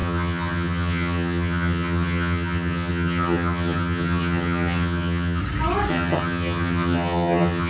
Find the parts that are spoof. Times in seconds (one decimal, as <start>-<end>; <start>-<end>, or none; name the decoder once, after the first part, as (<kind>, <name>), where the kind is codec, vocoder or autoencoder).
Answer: 0.0-5.4 (vocoder, HiFi-GAN); 5.9-7.7